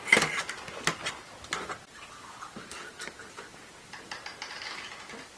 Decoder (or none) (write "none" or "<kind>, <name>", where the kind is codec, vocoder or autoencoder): none